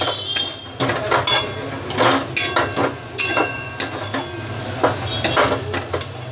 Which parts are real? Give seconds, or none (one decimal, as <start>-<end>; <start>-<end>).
0.0-2.8; 3.7-6.3